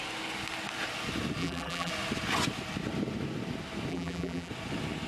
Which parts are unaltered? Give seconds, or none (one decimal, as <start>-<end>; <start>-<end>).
0.0-1.4; 1.9-3.9; 4.5-5.1